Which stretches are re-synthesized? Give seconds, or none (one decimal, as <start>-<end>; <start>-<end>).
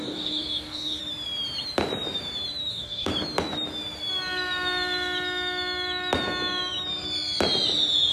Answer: 0.0-1.0; 2.7-3.1